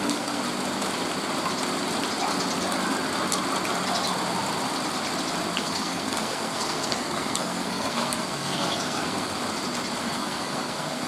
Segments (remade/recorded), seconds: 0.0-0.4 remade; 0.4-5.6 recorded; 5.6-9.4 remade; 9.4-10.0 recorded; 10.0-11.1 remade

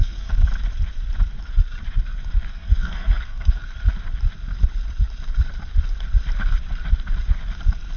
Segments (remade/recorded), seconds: 0.0-0.4 remade; 0.4-2.5 recorded; 2.5-3.6 remade; 3.6-8.0 recorded

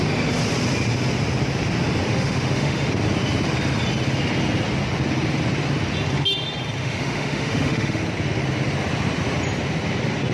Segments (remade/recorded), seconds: 0.0-2.1 recorded; 2.1-2.9 remade; 2.9-6.8 recorded; 6.8-8.0 remade; 8.0-10.3 recorded

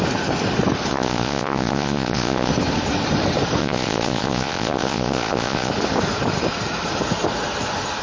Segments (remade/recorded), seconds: 0.0-0.9 recorded; 0.9-2.5 remade; 2.5-3.6 recorded; 3.6-5.7 remade; 5.7-8.0 recorded